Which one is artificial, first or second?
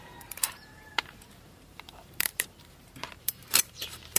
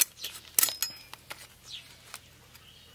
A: first